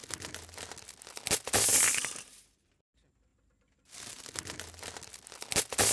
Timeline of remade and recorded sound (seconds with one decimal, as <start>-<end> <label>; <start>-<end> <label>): 0.0-5.9 recorded